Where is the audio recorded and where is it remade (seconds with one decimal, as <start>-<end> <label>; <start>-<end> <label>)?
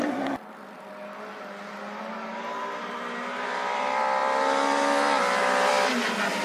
0.0-6.4 recorded